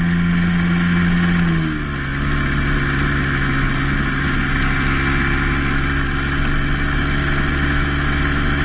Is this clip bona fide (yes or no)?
yes